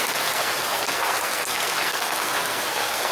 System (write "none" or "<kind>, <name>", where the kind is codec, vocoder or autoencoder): codec, SNAC